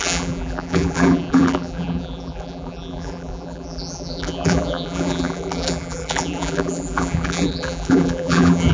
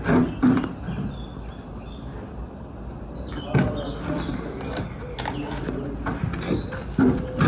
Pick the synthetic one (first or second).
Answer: first